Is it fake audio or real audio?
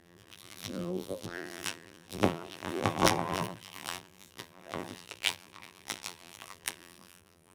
fake